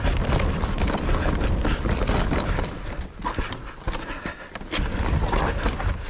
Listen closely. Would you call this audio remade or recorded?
recorded